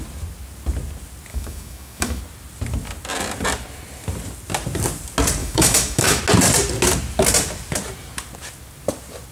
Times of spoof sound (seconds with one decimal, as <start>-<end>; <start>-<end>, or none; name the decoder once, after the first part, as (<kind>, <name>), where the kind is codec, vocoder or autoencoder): 1.3-2.2 (autoencoder, DAC-VAE); 5.4-6.2